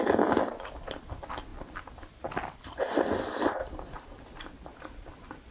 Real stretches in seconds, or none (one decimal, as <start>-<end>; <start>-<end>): 0.0-5.5

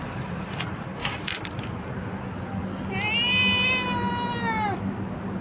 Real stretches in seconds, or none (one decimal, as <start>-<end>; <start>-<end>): 0.0-1.0; 2.0-5.4

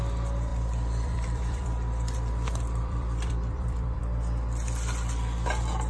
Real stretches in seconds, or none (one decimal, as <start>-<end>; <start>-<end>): 0.0-0.5; 4.0-5.9

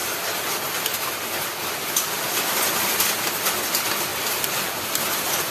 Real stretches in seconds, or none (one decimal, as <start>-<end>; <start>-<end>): 0.0-4.1; 5.0-5.5

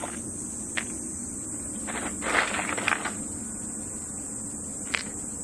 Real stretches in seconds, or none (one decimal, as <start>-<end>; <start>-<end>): 0.0-4.7

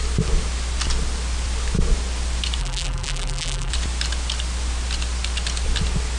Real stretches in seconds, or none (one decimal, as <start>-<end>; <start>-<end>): 0.0-2.6; 3.7-6.2

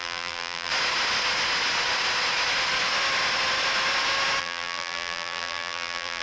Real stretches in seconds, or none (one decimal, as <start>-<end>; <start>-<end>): 0.7-4.4

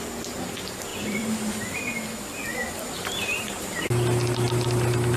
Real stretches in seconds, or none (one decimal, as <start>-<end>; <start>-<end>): 0.0-0.9; 1.8-2.5; 3.9-5.2